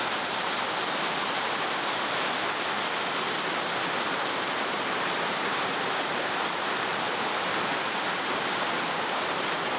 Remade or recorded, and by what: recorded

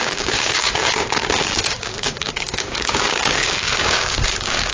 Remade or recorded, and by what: remade, codec, DAC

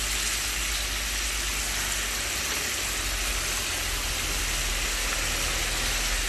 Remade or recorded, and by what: recorded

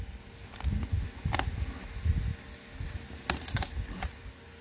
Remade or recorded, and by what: recorded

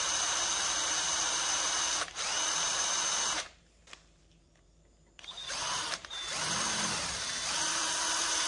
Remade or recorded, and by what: remade, vocoder, BigVGAN v2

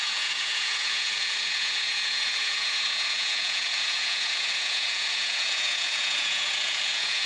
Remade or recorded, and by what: remade, vocoder, Vocos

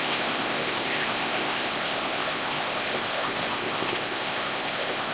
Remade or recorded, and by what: remade, codec, ZipCodec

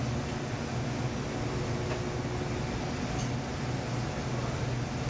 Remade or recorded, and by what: recorded